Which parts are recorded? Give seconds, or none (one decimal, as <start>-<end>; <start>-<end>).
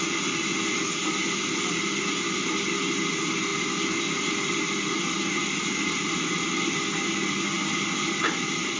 0.0-8.8